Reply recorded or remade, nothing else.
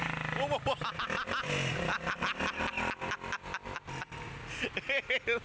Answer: recorded